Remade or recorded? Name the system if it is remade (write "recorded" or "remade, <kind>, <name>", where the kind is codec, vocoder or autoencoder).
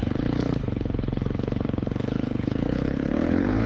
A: remade, codec, HILCodec